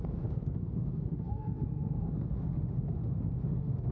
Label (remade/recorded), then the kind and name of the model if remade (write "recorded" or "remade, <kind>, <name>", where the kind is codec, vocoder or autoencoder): remade, autoencoder, DAC-VAE